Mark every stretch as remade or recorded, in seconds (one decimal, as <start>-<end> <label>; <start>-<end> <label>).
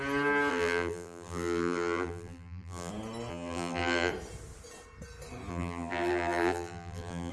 0.0-0.5 recorded; 0.5-2.9 remade; 2.9-3.3 recorded; 3.3-4.1 remade; 4.1-5.5 recorded; 5.5-7.3 remade